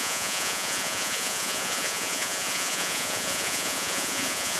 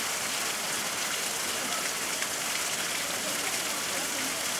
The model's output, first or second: first